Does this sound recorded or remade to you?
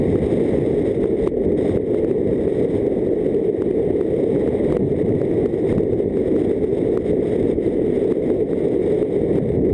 recorded